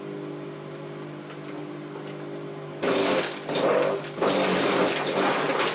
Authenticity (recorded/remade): recorded